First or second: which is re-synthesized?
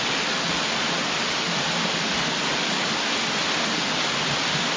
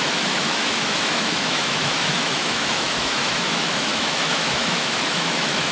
second